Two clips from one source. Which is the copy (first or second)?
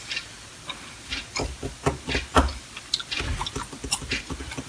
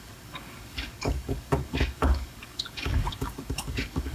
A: second